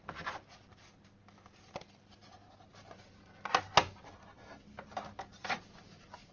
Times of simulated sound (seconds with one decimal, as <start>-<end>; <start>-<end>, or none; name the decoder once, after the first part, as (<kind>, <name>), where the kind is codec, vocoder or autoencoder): none